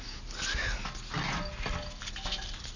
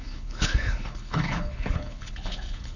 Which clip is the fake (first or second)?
second